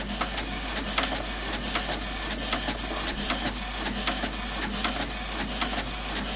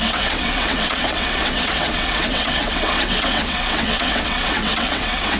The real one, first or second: first